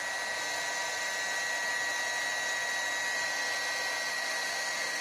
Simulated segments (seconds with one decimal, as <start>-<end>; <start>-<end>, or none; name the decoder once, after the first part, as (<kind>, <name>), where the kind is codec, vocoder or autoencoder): 4.1-5.0 (autoencoder, DAC-VAE)